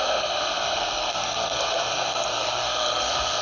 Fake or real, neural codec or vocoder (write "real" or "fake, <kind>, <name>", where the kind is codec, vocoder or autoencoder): fake, codec, SNAC